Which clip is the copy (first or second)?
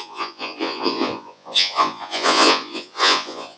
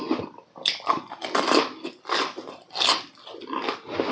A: first